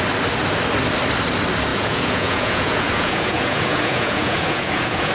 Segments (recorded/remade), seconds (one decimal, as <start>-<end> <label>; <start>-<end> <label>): 0.0-1.7 recorded; 1.7-5.1 remade